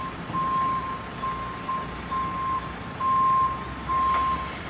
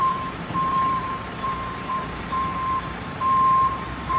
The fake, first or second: second